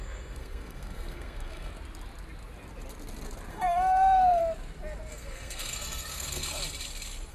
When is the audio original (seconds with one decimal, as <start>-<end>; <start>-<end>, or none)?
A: 1.7-3.5; 4.4-5.1; 6.6-7.3